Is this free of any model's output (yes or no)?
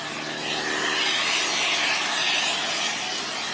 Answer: yes